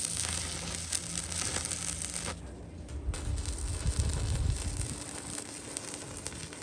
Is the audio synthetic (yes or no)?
no